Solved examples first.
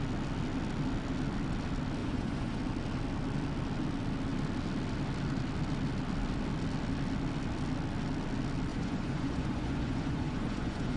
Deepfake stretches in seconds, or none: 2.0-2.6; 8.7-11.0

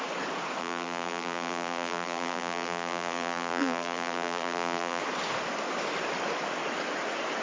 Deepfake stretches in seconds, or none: 0.6-5.0

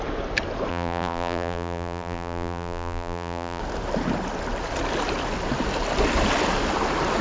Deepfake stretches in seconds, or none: 0.7-3.6

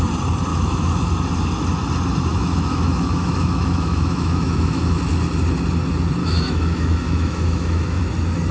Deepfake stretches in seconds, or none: 0.5-1.1; 2.3-5.0; 6.2-8.0